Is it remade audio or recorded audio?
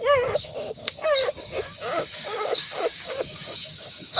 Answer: remade